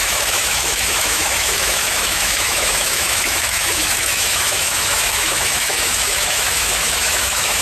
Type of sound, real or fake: fake